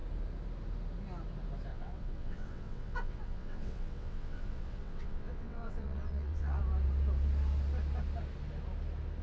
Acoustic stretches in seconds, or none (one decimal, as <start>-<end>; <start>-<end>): 0.0-1.7; 6.6-9.2